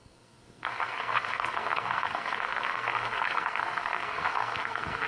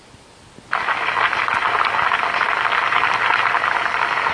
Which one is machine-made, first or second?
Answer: first